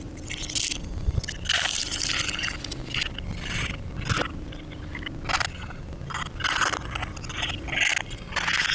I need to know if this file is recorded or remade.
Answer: recorded